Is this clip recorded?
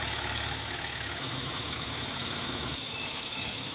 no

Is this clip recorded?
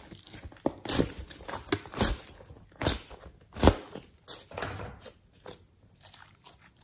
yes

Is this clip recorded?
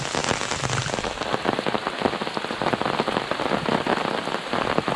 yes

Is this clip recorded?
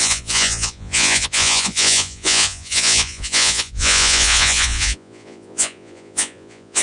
no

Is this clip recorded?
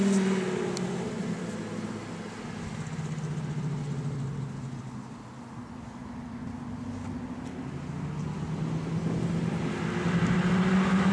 yes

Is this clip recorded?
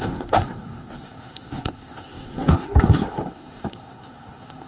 no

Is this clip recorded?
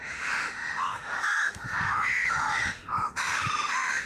no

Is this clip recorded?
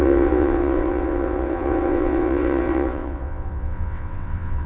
no